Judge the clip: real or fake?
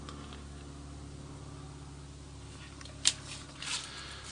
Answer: real